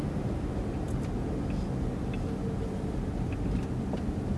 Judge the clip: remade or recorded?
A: recorded